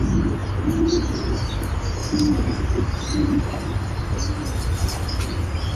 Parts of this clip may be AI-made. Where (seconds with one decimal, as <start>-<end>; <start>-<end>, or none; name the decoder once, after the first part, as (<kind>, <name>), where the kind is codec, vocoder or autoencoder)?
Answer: 2.0-5.8 (vocoder, BigVGAN v2)